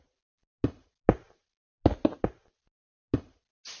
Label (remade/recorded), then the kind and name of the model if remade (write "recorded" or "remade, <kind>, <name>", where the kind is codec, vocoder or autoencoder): recorded